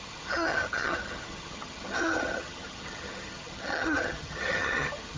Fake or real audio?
fake